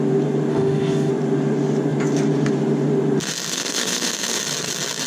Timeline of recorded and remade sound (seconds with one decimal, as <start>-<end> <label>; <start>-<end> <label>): 0.0-0.5 recorded; 0.5-1.1 remade; 1.1-3.5 recorded; 3.5-4.4 remade; 4.4-5.1 recorded